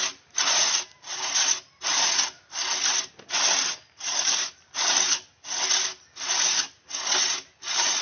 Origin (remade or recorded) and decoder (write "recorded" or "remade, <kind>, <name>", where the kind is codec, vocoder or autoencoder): recorded